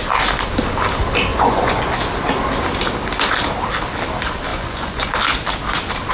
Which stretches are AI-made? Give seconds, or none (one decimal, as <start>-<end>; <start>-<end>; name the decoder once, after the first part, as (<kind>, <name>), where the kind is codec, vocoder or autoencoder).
1.3-1.9 (vocoder, Vocos); 4.5-5.1